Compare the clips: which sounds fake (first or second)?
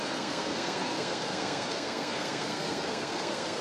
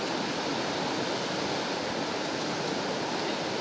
first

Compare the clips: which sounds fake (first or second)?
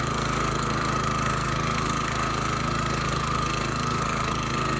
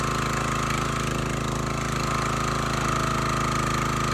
first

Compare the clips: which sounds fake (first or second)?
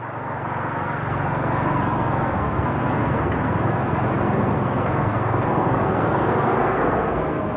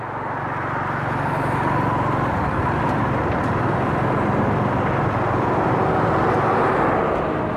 first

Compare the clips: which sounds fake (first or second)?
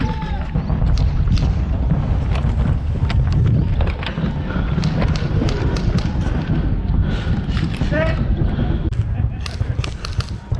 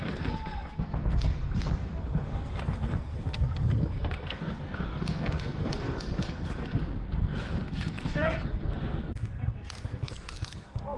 second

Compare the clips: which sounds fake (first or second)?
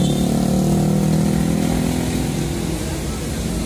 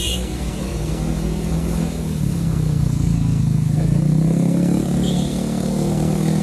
second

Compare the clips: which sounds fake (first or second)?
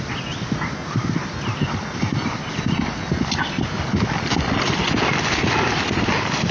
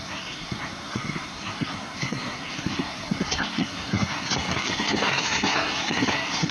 second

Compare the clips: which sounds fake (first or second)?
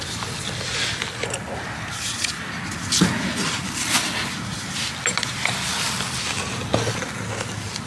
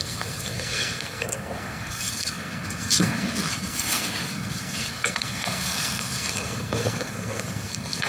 second